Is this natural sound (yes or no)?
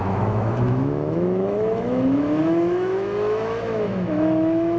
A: no